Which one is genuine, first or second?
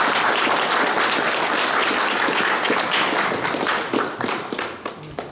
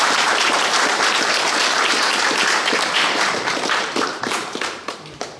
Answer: first